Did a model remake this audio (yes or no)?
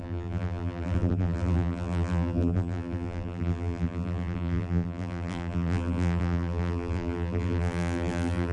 yes